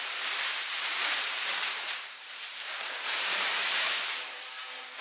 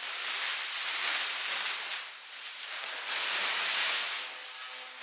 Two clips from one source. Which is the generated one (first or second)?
first